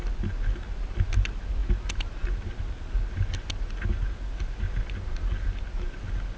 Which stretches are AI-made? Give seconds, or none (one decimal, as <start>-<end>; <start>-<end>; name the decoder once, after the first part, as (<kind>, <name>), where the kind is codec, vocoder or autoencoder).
none